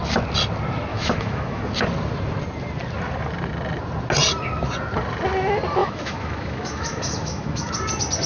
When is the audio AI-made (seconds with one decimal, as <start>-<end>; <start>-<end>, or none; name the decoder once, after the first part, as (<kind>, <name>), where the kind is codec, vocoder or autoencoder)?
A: 0.9-1.6 (autoencoder, DAC-VAE); 5.8-7.7